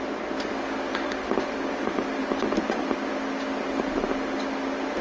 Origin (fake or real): real